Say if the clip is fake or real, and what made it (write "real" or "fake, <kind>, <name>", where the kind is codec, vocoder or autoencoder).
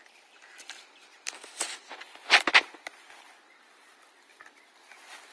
real